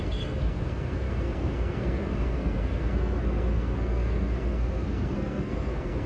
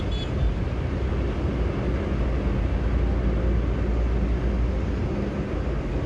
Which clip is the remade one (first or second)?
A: first